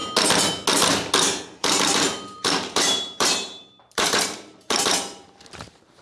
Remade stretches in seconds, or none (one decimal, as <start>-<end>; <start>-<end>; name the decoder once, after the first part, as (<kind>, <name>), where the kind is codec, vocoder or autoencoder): 1.6-6.0 (vocoder, BigVGAN v2)